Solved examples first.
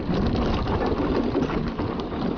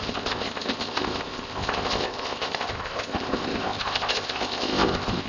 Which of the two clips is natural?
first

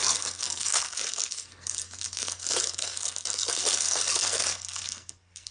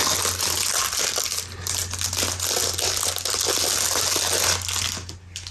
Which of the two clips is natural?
second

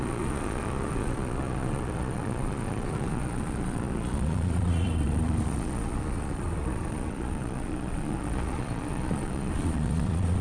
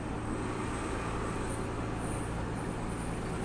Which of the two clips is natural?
second